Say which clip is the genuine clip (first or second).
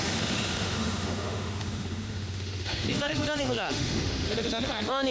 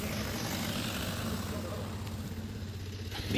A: second